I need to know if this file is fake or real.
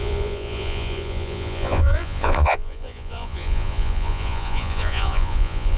fake